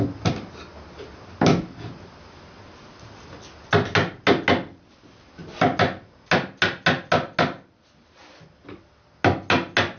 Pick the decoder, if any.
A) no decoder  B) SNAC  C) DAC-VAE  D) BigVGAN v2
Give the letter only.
A